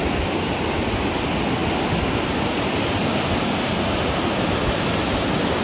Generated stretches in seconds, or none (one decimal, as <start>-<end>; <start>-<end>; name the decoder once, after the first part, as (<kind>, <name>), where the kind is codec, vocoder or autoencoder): none